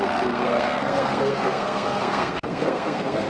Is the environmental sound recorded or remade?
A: remade